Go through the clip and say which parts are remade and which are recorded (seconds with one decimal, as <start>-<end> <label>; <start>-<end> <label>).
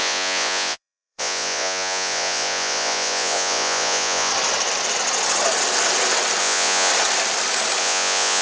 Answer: 0.0-4.3 remade; 4.3-6.4 recorded; 6.4-6.9 remade; 6.9-7.8 recorded; 7.8-8.4 remade